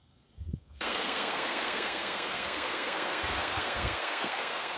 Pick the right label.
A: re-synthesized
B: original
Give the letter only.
A